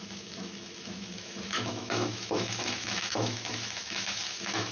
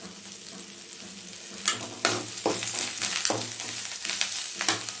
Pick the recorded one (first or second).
second